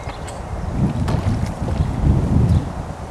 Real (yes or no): yes